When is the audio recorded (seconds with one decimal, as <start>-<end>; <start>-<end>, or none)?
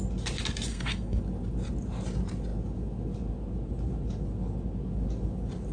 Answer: 0.0-0.7; 1.2-5.7